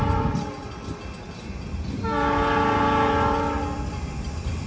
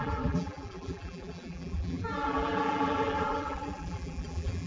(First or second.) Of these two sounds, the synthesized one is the second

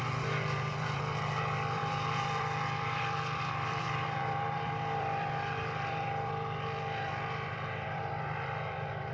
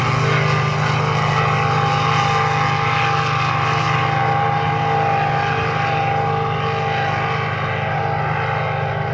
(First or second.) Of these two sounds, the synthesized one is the first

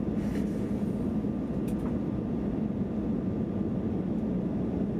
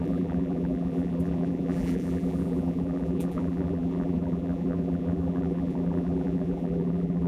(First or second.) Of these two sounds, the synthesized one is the second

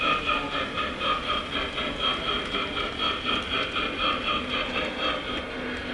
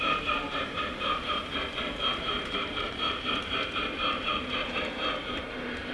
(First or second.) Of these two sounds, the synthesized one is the second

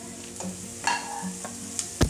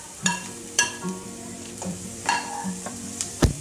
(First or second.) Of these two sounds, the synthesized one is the second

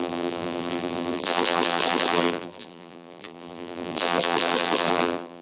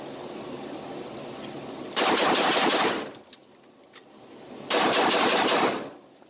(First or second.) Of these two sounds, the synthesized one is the first